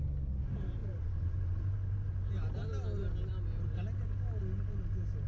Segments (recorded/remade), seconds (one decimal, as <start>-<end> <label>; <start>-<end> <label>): 0.0-0.8 recorded; 0.8-2.3 remade; 2.3-5.3 recorded